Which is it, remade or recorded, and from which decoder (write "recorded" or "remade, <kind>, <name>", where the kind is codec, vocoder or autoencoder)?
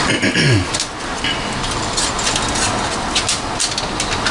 recorded